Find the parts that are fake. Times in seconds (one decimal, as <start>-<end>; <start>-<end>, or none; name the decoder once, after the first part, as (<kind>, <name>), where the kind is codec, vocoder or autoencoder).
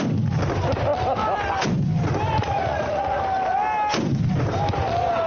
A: 2.3-3.2 (vocoder, Vocos)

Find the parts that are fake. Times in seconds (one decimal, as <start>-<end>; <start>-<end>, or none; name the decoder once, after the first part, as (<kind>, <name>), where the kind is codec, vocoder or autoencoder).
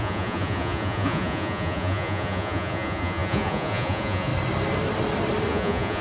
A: 0.0-4.3 (vocoder, Vocos); 5.5-6.0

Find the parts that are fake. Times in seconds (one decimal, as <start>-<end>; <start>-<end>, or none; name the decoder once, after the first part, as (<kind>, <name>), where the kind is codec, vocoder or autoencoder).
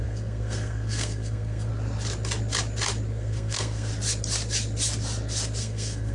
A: 0.0-1.7 (codec, SNAC); 3.1-3.9; 5.6-6.1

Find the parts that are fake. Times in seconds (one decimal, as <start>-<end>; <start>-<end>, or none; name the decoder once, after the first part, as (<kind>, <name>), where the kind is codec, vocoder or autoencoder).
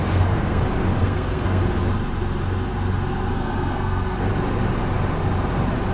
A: 0.0-0.6 (codec, SNAC); 1.0-1.6; 3.3-4.3